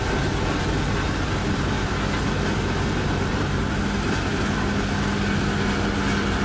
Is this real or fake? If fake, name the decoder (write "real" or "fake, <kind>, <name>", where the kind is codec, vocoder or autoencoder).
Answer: real